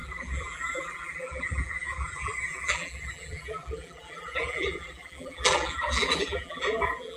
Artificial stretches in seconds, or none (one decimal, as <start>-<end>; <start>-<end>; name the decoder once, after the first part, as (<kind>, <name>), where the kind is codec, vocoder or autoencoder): 0.0-7.2 (vocoder, BigVGAN v2)